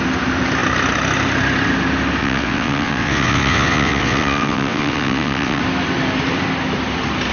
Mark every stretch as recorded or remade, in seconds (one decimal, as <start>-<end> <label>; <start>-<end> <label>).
0.0-2.2 recorded; 2.2-5.6 remade; 5.6-7.3 recorded